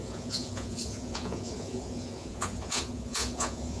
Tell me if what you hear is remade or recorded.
remade